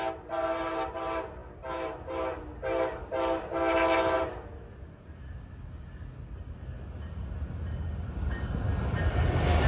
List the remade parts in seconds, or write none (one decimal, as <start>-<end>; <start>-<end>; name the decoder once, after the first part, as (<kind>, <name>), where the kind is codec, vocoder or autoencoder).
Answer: none